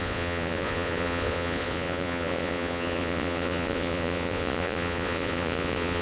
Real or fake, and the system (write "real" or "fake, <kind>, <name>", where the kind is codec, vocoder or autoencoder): fake, vocoder, Vocos